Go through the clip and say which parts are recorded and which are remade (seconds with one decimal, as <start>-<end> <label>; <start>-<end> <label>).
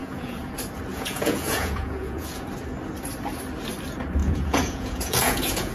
0.0-0.5 remade; 0.5-0.9 recorded; 0.9-2.5 remade; 2.5-4.2 recorded; 4.2-5.7 remade